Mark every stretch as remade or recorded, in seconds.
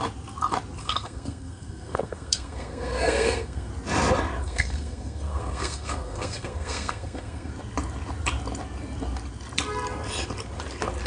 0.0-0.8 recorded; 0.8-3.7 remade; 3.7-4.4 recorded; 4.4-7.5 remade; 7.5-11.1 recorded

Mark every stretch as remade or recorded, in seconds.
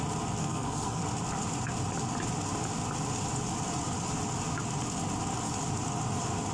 0.0-0.4 recorded; 0.4-1.0 remade; 1.0-6.5 recorded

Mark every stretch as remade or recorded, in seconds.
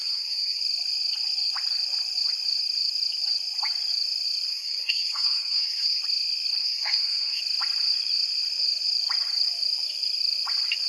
0.0-0.6 remade; 0.6-4.5 recorded; 4.5-6.0 remade; 6.0-6.6 recorded; 6.6-7.4 remade; 7.4-10.9 recorded